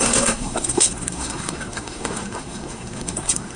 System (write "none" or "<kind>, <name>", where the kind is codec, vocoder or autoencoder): codec, SNAC